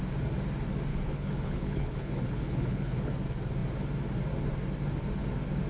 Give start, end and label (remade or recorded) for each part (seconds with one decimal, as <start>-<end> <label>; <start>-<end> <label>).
0.0-0.9 recorded; 0.9-3.1 remade; 3.1-5.7 recorded